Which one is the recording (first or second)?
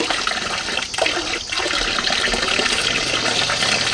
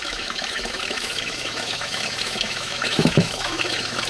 first